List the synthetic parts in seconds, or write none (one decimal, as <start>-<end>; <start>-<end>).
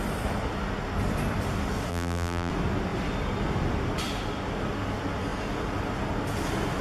1.9-2.5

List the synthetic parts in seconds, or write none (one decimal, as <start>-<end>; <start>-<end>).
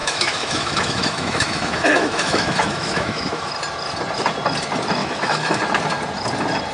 0.0-3.5; 5.0-5.6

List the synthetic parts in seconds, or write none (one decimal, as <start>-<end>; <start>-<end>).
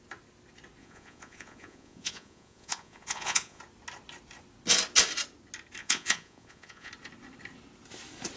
0.8-3.6; 5.8-6.9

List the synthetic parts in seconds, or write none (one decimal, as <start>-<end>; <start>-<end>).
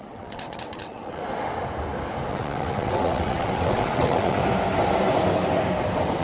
0.0-1.2; 2.3-4.4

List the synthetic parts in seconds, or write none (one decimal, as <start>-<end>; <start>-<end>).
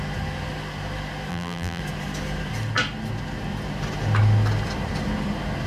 1.3-1.8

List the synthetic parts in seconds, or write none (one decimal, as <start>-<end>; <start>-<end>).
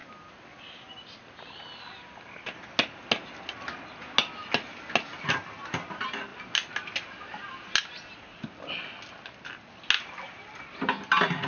none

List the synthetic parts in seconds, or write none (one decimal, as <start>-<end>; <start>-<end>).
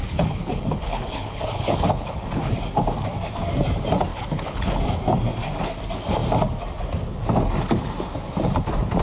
0.0-2.5; 4.1-4.8